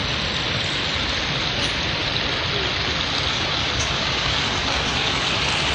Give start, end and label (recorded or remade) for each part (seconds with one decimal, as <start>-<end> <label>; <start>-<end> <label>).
0.0-3.3 recorded; 3.3-5.3 remade; 5.3-5.7 recorded